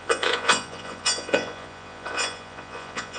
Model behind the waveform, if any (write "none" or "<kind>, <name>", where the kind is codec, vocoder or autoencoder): vocoder, Vocos